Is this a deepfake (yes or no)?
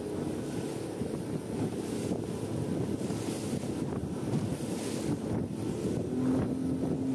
no